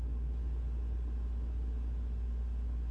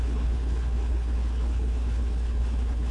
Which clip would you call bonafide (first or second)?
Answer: first